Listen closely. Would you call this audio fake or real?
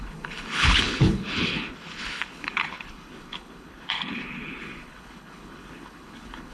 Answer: fake